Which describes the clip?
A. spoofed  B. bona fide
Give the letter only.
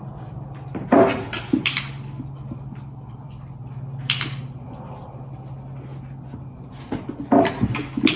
B